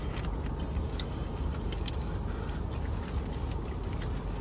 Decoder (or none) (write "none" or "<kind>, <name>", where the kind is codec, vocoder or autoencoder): none